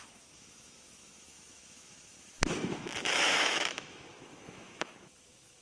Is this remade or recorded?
remade